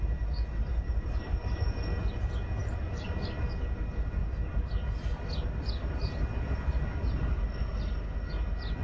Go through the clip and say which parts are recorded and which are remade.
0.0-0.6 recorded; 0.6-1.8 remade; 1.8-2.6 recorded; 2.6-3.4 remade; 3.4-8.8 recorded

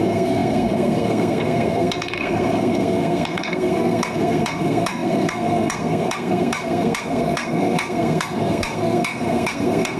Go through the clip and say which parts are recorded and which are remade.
0.0-10.0 remade